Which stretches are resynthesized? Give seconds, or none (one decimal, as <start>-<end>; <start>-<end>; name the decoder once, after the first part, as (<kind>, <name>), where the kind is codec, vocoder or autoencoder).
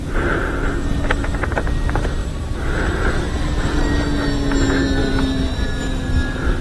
none